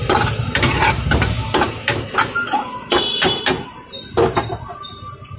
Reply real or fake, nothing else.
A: real